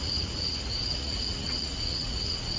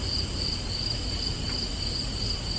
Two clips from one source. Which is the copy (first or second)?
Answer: first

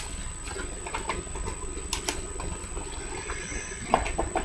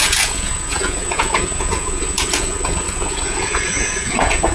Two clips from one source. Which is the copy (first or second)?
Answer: second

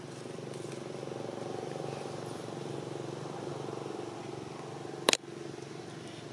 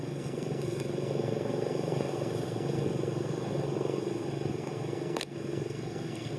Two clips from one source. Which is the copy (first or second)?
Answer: second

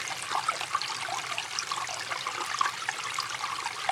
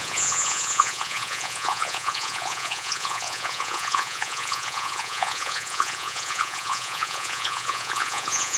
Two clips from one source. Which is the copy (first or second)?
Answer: second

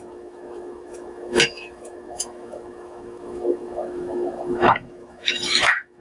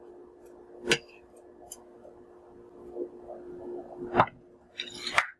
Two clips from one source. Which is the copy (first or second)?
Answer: first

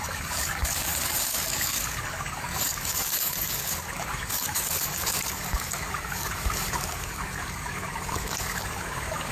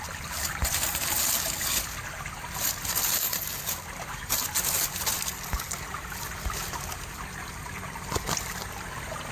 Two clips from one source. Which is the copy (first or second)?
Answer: first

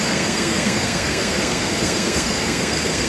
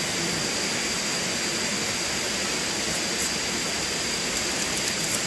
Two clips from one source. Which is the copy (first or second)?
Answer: first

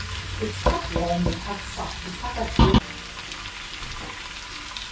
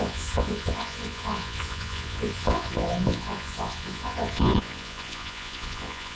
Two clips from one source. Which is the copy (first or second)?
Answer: second